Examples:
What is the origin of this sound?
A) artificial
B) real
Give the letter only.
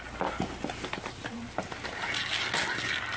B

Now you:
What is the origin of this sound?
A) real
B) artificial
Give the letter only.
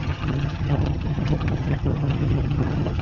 B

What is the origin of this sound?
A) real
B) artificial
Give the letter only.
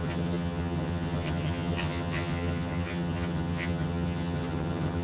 B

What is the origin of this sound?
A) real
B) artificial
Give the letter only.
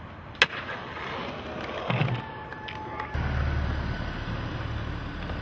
A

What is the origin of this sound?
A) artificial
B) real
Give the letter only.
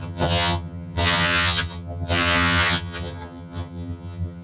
A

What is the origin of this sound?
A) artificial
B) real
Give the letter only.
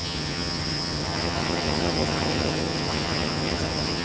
A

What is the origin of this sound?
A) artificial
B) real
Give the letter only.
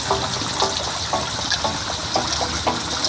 B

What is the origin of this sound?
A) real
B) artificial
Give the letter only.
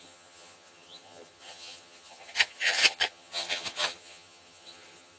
B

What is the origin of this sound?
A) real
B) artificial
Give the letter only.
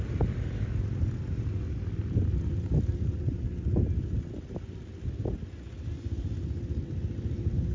A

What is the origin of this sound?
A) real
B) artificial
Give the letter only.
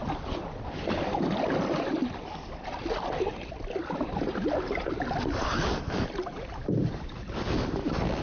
A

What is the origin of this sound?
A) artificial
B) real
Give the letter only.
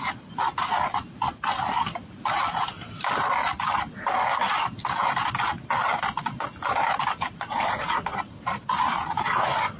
B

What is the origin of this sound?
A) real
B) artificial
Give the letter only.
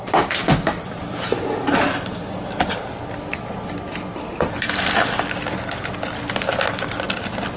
A